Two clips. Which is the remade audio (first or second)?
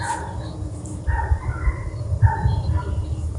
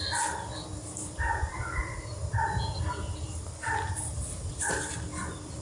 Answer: first